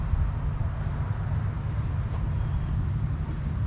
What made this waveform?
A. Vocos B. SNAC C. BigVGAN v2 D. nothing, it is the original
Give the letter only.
D